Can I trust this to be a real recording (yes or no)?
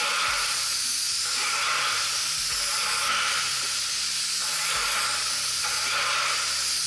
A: yes